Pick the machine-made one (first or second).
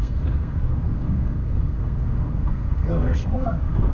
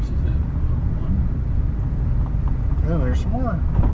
first